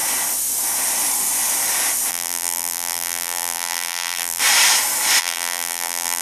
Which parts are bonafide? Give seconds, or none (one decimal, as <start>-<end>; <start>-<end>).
0.0-2.1; 4.4-5.2